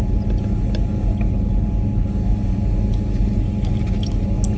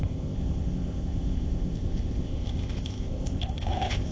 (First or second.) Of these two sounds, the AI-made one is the second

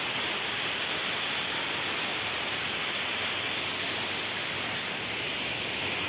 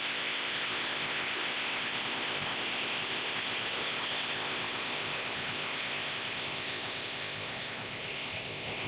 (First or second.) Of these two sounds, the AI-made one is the second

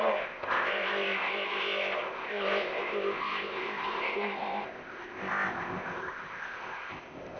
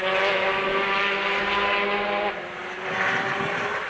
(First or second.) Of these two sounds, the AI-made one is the first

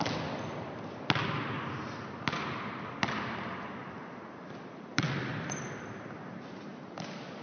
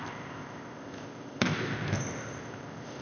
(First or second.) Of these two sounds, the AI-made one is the second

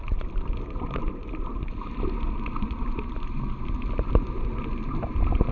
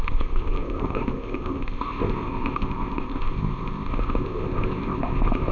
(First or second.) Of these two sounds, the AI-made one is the second